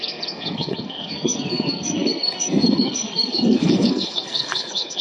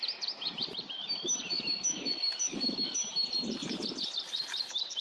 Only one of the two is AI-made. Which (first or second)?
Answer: first